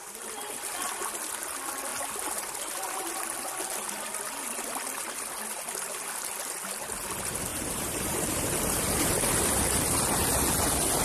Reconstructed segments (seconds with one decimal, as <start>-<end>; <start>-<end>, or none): 7.5-9.1